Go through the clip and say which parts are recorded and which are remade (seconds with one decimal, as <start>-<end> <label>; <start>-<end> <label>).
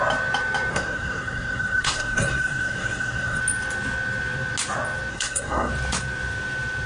0.0-0.7 recorded; 0.7-3.4 remade; 3.4-5.1 recorded; 5.1-5.7 remade; 5.7-6.9 recorded